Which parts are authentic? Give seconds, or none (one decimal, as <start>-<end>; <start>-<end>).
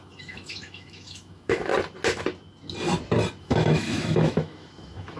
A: 1.7-3.4